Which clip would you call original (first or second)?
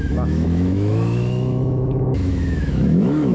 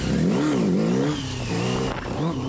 second